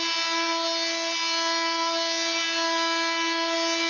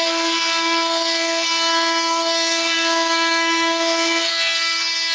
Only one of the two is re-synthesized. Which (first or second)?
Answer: second